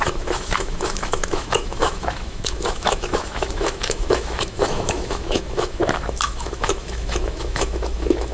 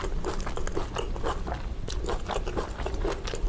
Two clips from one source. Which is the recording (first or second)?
second